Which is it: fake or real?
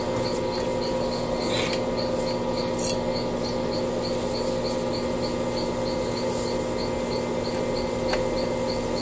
real